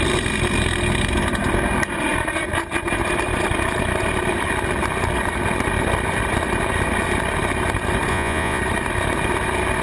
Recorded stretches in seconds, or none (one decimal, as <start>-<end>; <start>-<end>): 0.0-8.1; 8.6-9.8